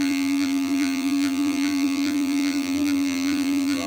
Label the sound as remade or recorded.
remade